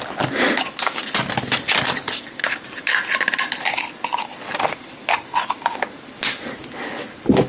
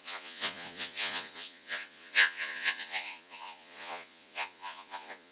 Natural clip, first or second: first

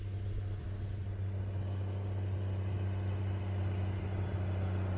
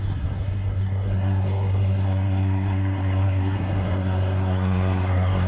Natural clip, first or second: first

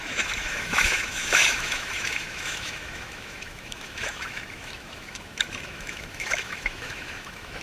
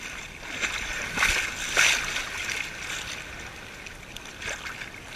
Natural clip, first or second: second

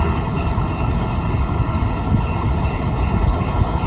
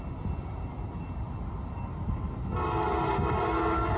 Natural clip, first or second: second